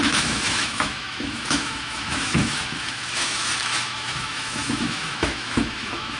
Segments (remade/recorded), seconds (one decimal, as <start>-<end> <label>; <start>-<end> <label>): 0.0-6.2 remade